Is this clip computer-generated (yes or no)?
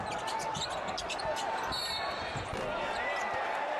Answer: no